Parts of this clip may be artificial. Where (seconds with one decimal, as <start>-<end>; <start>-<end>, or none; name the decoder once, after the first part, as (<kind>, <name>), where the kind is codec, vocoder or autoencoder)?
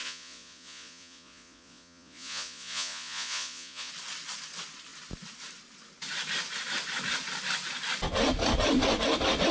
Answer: 0.0-3.9 (vocoder, Vocos)